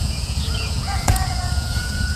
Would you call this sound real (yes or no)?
no